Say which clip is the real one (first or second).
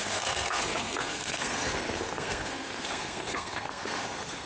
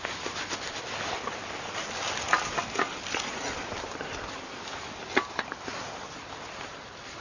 second